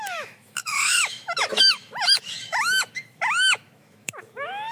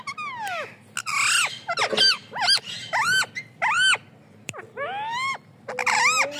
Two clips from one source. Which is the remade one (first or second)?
first